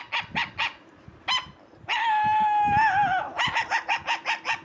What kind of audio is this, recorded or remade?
recorded